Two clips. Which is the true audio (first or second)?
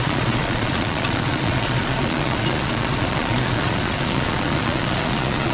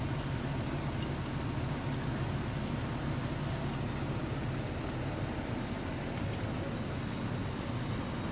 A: second